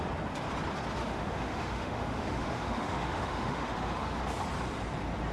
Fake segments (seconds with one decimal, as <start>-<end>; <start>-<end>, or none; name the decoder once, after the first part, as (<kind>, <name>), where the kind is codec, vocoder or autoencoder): 1.0-4.2 (autoencoder, DAC-VAE)